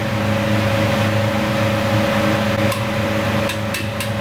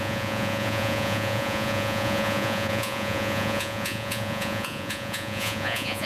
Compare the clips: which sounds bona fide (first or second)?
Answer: first